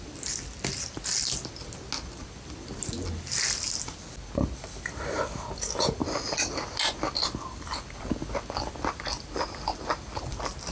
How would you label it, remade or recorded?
recorded